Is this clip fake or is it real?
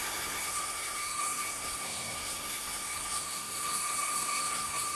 fake